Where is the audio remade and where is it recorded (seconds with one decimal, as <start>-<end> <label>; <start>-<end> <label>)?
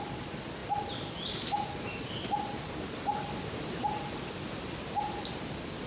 0.0-5.9 recorded